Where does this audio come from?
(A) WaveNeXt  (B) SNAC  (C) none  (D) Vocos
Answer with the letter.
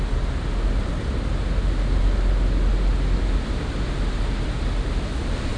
C